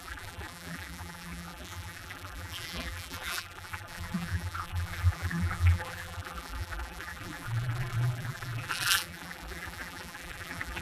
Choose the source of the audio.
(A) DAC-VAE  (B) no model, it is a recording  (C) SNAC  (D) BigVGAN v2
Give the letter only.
D